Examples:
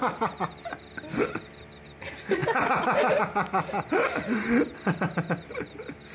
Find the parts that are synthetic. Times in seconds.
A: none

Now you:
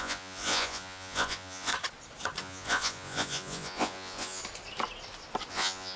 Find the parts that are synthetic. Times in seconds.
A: 0.0-1.7 (vocoder, Vocos); 2.4-4.4; 5.5-6.0

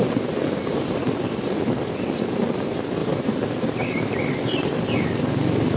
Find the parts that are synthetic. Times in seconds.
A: 0.0-5.8 (vocoder, BigVGAN v2)

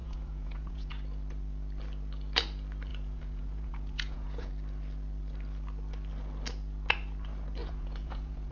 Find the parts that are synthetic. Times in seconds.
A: 0.0-0.9 (vocoder, Vocos); 2.9-4.5; 7.6-8.5

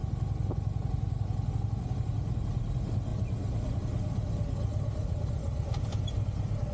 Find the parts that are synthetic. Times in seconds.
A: none